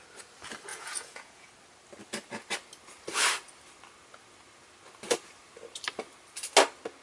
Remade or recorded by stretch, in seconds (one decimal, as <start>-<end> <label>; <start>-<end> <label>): 0.0-0.7 recorded; 0.7-1.5 remade; 1.5-7.0 recorded